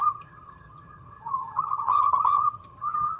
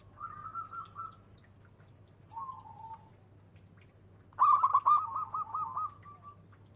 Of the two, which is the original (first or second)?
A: second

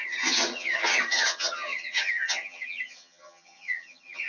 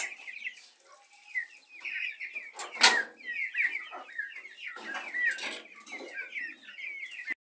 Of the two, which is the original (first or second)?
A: second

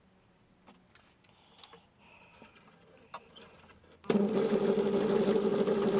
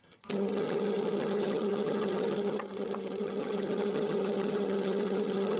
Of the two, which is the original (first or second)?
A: first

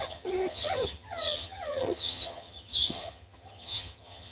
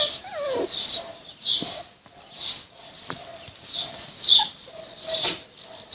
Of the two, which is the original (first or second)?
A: second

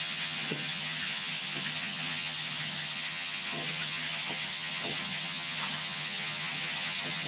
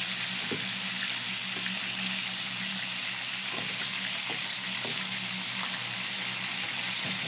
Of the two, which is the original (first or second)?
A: second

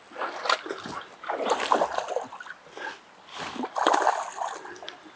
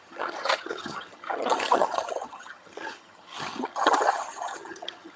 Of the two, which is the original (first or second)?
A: first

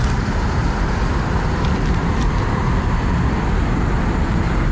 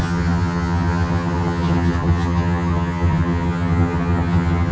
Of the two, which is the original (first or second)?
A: first